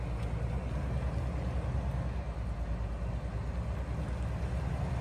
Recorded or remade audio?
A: recorded